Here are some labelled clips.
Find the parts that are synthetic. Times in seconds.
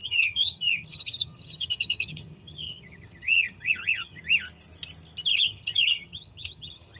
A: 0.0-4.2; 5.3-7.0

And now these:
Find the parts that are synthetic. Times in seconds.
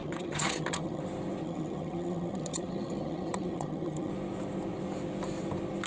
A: 0.0-1.0; 1.4-4.1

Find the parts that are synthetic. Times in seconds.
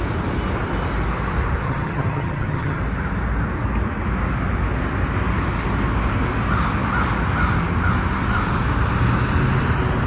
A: 1.6-2.8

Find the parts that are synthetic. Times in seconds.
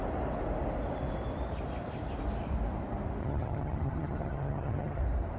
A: 3.2-5.0